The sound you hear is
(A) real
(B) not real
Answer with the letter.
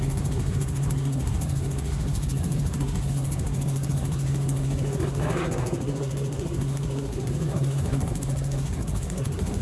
B